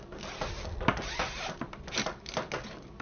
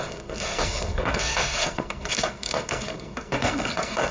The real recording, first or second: first